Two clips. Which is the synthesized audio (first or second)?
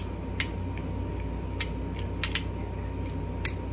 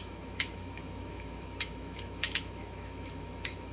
second